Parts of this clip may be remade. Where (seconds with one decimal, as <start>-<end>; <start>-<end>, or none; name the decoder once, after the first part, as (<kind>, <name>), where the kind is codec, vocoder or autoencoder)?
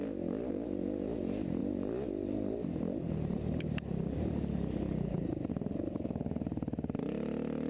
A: 1.6-5.5 (vocoder, BigVGAN v2)